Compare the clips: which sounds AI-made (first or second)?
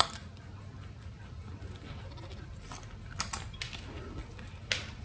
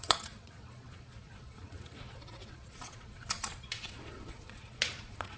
second